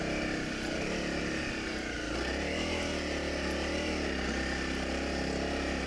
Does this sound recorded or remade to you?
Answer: recorded